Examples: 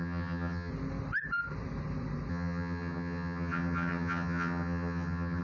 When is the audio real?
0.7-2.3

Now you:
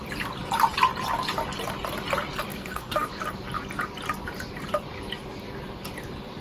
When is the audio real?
0.0-2.5; 3.1-6.4

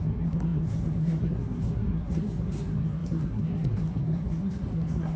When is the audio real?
none

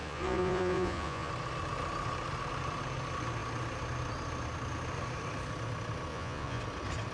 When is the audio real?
1.3-6.1; 6.6-7.1